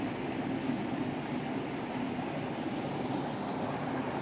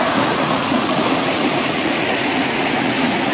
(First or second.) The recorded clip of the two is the first